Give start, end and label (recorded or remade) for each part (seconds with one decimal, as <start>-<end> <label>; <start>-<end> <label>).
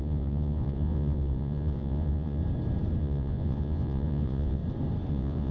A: 0.0-2.4 remade; 2.4-3.0 recorded; 3.0-4.6 remade; 4.6-5.1 recorded; 5.1-5.5 remade